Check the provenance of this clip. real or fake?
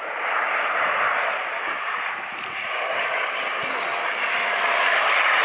fake